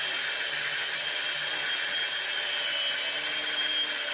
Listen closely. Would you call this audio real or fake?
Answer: real